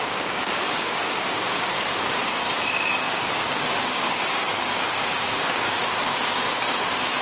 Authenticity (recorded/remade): remade